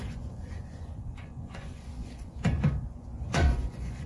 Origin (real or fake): fake